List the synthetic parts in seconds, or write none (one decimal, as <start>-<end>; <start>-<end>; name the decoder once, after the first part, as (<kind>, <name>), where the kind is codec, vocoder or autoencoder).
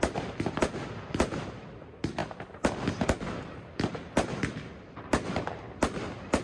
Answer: none